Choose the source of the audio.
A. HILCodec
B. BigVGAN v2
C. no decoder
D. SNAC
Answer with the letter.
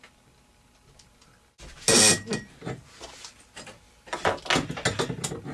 C